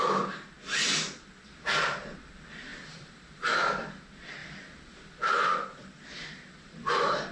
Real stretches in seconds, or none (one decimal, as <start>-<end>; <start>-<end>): 0.0-2.7; 4.0-4.4; 6.7-7.3